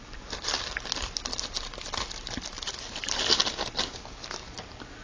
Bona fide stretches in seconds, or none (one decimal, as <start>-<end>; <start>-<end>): 0.0-5.0